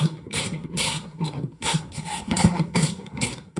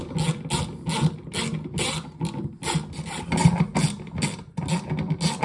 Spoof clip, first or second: first